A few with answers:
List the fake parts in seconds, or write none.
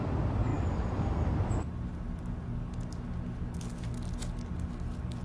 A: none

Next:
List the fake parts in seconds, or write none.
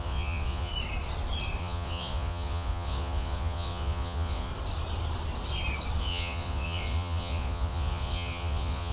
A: 0.0-0.7 (vocoder, Vocos); 1.6-4.5; 6.0-8.9